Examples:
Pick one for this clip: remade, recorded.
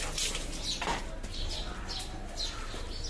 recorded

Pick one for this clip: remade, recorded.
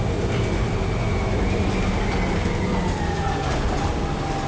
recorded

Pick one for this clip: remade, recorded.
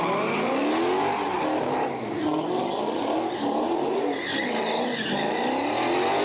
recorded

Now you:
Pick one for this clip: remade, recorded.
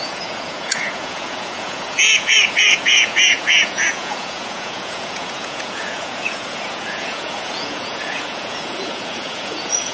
remade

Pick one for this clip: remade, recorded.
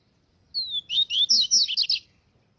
recorded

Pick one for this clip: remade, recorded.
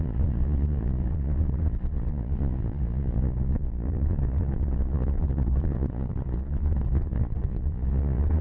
remade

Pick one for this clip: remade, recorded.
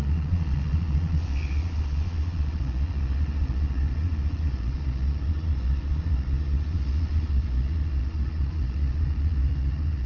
remade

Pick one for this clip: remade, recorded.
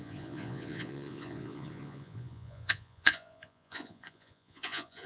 remade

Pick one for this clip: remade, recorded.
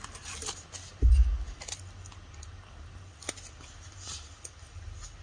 recorded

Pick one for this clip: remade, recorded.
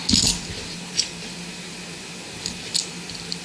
recorded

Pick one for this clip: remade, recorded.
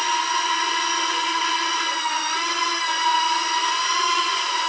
remade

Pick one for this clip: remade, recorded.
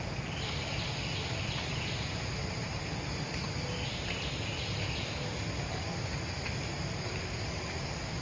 recorded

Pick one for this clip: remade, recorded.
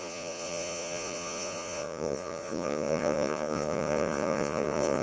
remade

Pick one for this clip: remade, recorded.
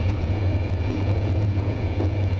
remade